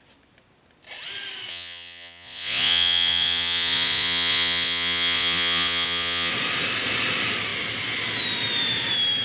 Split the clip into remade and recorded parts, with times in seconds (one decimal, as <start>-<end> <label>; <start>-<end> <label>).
0.0-1.5 recorded; 1.5-6.3 remade; 6.3-9.2 recorded